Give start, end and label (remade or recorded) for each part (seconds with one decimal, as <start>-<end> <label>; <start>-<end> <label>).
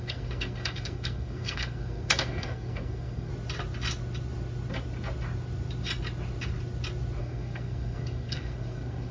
0.0-3.3 remade; 3.3-7.2 recorded; 7.2-9.1 remade